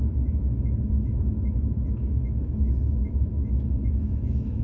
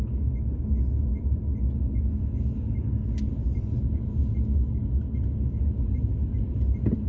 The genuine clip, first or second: second